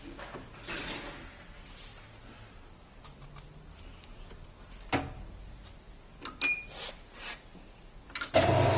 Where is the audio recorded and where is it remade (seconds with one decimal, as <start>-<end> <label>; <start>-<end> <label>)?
0.0-8.8 recorded